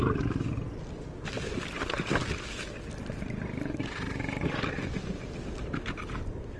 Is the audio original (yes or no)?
yes